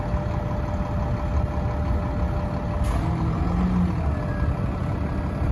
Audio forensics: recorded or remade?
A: recorded